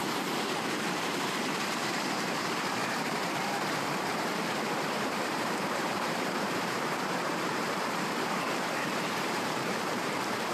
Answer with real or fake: fake